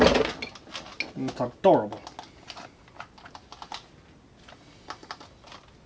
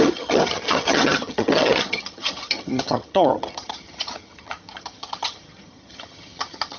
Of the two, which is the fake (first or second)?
second